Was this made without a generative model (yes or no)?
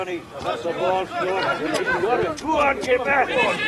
no